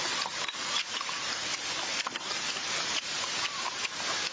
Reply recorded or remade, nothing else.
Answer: recorded